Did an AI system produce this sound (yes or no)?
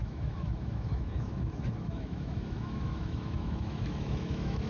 yes